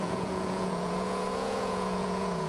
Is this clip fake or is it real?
fake